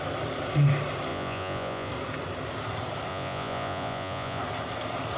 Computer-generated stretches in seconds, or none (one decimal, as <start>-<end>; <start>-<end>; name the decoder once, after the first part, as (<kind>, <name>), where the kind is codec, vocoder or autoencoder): 1.1-1.9 (vocoder, Vocos); 3.1-4.4